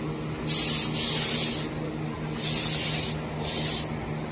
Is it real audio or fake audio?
real